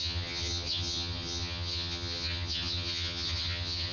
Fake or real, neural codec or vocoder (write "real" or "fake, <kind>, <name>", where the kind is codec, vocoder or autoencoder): fake, vocoder, HiFi-GAN